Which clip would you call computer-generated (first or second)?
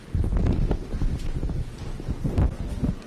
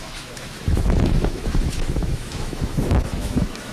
second